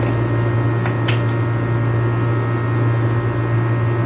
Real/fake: real